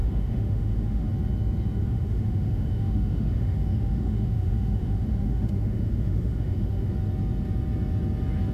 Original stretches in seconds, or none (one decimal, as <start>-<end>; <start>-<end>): 1.1-1.8; 6.9-8.5